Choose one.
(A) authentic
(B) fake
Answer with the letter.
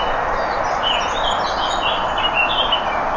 A